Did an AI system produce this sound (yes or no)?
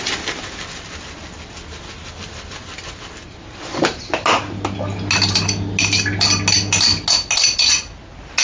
no